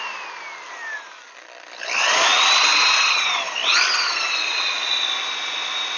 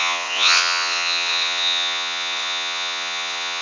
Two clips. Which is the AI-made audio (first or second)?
second